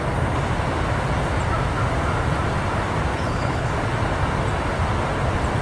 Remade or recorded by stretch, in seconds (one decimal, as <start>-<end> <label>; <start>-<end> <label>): 0.0-3.1 recorded; 3.1-3.7 remade; 3.7-5.6 recorded